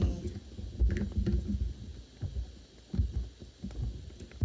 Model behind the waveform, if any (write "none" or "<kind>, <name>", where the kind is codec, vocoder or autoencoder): none